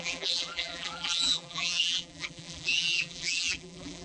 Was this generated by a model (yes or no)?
yes